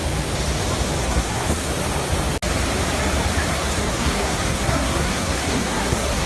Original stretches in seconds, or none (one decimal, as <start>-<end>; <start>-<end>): 0.0-1.0; 1.7-3.5